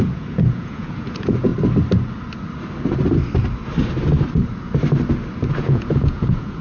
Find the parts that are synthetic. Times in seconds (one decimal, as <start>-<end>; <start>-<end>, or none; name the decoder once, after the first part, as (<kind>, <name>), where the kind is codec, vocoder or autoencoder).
0.0-1.5 (vocoder, Vocos); 5.5-6.6